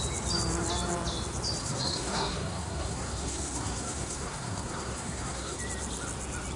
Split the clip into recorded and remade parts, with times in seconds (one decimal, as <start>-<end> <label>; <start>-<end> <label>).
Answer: 0.0-1.6 recorded; 1.6-5.6 remade; 5.6-6.6 recorded